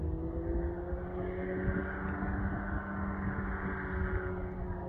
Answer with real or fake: real